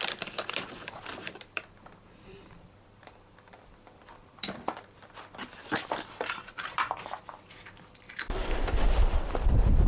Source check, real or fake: fake